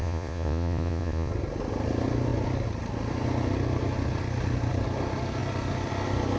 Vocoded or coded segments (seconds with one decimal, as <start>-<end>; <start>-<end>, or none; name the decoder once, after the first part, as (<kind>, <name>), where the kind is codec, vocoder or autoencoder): 0.0-1.3 (vocoder, Vocos)